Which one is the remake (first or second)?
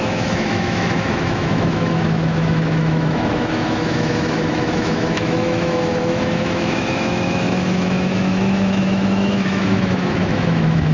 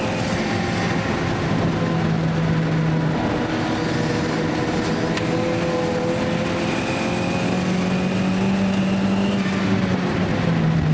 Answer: first